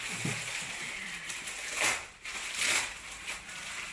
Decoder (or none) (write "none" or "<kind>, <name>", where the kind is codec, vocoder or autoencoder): vocoder, BigVGAN v2